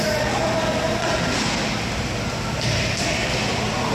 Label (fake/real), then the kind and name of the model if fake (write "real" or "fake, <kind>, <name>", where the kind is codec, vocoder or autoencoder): real